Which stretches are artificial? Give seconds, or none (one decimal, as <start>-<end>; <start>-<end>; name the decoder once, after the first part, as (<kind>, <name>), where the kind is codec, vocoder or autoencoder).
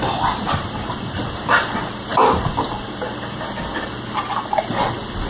none